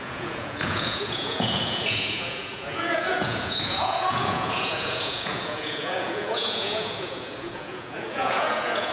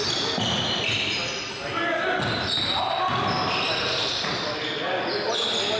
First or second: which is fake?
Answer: first